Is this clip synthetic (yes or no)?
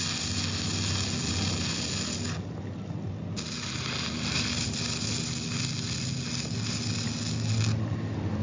no